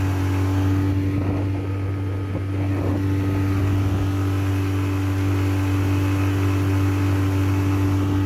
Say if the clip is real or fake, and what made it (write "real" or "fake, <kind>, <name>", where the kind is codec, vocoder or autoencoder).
real